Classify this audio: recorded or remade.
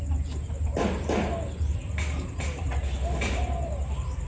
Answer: recorded